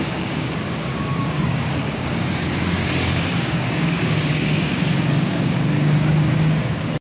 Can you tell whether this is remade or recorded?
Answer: remade